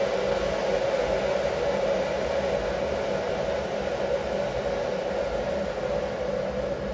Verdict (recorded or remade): recorded